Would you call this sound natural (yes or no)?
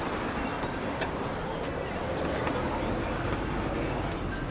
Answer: yes